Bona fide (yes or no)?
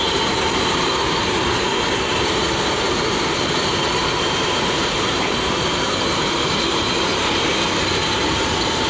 no